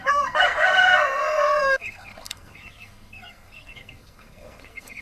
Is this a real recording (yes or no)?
no